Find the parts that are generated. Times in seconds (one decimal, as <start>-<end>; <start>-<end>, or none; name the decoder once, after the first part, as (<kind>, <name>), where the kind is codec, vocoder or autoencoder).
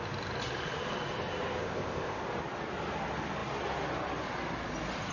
1.6-2.2 (codec, ZipCodec)